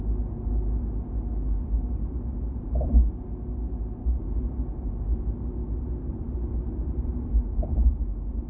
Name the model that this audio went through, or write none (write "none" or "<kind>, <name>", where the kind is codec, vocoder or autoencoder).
none